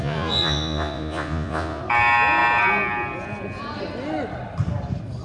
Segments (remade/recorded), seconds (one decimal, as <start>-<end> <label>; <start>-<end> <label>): 0.0-1.8 remade; 1.8-5.2 recorded